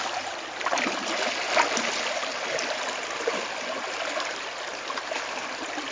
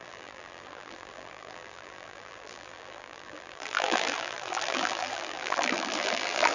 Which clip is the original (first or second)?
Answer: first